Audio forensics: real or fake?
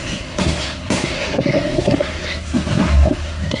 fake